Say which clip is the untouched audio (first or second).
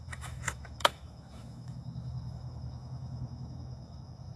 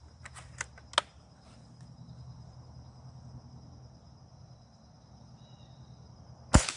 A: second